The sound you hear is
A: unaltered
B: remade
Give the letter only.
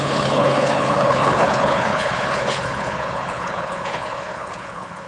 B